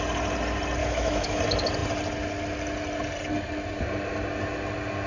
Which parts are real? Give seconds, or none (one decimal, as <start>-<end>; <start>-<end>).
0.0-0.8; 1.4-5.1